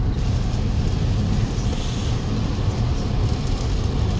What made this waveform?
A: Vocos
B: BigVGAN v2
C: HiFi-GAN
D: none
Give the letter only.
D